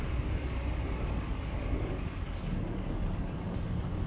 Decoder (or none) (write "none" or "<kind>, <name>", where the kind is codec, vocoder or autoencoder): codec, DAC